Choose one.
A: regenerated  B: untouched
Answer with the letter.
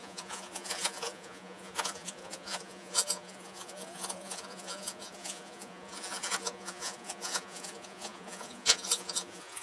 A